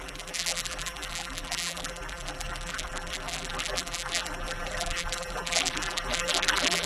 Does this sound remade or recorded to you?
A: remade